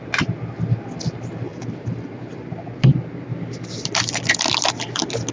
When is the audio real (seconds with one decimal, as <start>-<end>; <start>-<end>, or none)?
0.0-5.3